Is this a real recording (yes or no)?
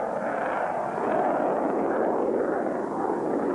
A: yes